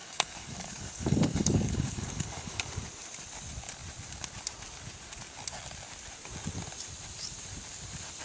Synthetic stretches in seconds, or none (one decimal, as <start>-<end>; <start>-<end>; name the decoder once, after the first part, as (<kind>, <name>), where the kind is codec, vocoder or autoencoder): 0.0-2.6 (codec, DAC)